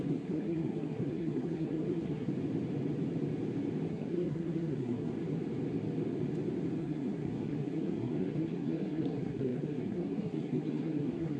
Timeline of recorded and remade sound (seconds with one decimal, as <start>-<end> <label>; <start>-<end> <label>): 0.0-2.3 remade; 2.3-3.9 recorded; 3.9-5.1 remade; 5.1-6.8 recorded; 6.8-11.4 remade